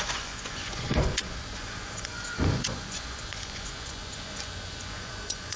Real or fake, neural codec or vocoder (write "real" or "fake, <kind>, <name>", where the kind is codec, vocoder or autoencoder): fake, vocoder, Vocos